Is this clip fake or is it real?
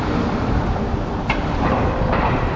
fake